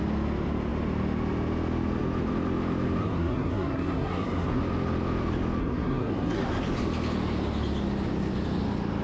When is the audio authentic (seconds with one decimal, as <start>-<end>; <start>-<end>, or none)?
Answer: 0.0-3.0; 4.6-5.6; 6.4-9.0